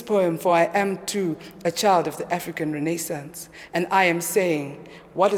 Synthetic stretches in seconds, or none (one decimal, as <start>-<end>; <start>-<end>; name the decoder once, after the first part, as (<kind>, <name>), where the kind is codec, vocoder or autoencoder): none